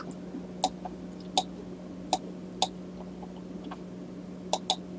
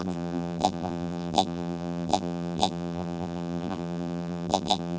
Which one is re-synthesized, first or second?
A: second